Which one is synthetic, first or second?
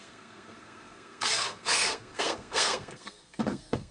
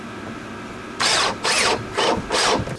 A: first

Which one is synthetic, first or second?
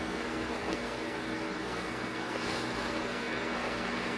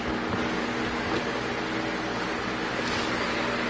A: first